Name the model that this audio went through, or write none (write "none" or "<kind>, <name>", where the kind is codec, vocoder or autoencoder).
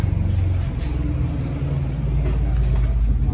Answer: none